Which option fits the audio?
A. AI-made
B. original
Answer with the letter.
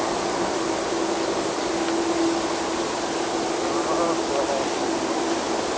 B